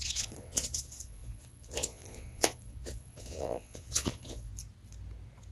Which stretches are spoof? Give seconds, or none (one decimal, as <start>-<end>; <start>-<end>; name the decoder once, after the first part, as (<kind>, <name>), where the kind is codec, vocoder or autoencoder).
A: 0.0-4.5 (vocoder, Vocos)